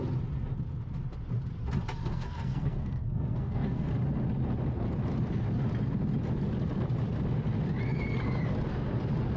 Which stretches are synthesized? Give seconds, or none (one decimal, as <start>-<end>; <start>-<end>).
2.0-3.9